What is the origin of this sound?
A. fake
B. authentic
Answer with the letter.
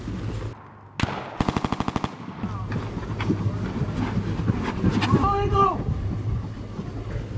B